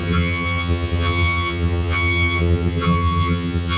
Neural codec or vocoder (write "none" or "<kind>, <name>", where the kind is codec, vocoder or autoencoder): vocoder, HiFi-GAN